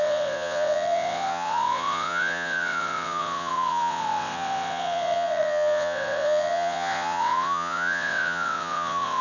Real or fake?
fake